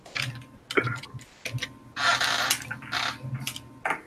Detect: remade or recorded recorded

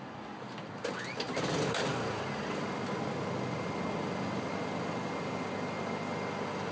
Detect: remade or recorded recorded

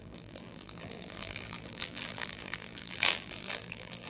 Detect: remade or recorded remade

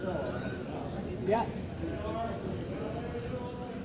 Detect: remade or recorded recorded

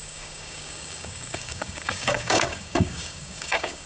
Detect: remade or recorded remade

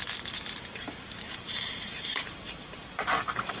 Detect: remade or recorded remade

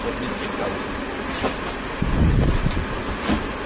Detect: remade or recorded recorded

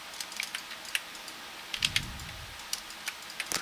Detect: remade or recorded recorded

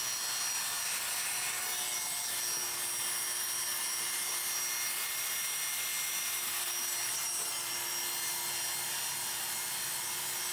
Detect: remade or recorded recorded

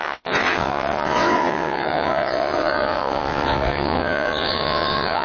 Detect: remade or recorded remade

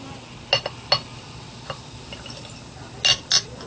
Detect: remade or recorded recorded